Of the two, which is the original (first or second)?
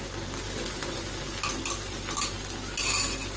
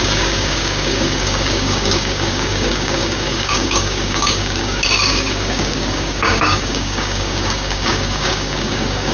first